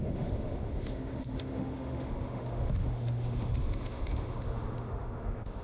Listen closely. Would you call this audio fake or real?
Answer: fake